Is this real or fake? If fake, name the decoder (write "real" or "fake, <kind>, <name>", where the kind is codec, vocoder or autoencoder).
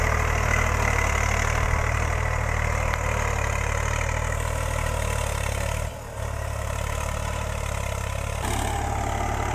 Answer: real